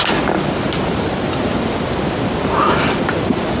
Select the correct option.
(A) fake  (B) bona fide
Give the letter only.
B